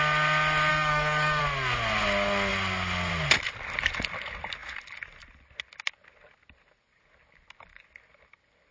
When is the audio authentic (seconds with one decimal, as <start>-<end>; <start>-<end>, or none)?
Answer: 0.0-0.7; 1.4-8.7